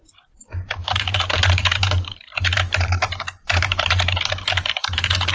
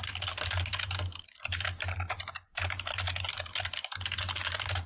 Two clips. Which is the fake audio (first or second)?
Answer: first